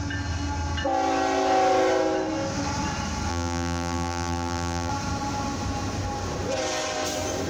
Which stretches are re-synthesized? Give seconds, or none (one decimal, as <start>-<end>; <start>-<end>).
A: 3.3-4.9